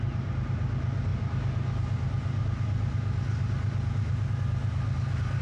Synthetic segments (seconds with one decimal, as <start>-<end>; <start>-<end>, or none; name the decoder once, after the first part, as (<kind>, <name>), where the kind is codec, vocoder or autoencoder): none